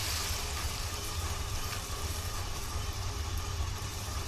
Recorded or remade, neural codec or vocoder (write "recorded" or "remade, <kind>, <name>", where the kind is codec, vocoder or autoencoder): remade, vocoder, BigVGAN v2